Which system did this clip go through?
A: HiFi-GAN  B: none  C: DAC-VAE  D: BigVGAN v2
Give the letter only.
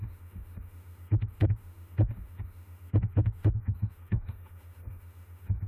C